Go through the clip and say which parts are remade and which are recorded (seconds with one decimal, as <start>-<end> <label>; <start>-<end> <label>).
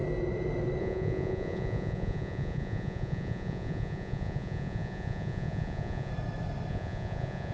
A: 0.0-0.8 recorded; 0.8-6.1 remade; 6.1-6.7 recorded; 6.7-7.5 remade